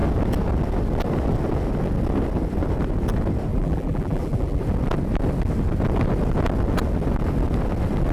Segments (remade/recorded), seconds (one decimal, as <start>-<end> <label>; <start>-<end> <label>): 0.0-3.5 recorded; 3.5-4.6 remade; 4.6-8.1 recorded